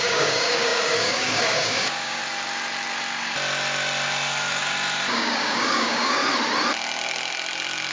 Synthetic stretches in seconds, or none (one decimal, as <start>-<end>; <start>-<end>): 0.0-2.2; 5.1-6.2